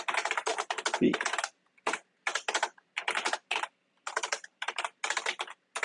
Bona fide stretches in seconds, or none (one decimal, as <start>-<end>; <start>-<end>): 0.0-5.8